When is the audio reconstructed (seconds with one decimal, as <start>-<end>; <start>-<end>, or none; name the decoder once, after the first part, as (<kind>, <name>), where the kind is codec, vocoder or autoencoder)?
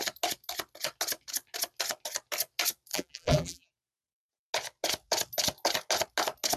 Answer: 2.9-3.7 (vocoder, BigVGAN v2)